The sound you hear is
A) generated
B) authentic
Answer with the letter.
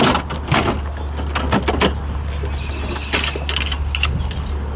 B